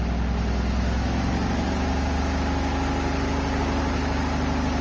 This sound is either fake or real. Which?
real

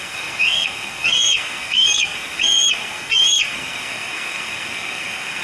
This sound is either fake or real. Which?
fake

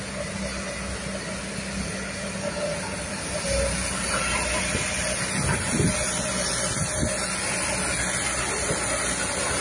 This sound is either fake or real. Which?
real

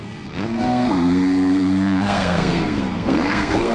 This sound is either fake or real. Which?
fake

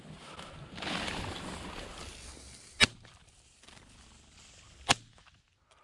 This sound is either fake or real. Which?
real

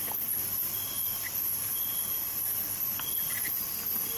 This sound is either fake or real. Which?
real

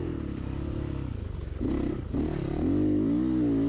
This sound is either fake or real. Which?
real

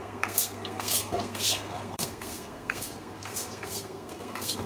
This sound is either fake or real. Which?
fake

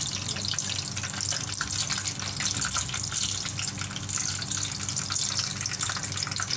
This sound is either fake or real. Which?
real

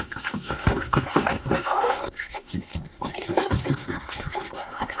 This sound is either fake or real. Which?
fake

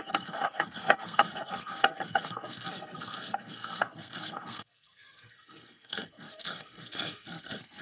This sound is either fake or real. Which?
fake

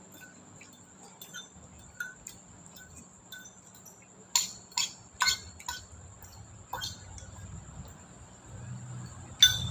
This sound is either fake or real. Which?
real